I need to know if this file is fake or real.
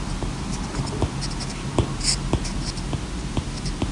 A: real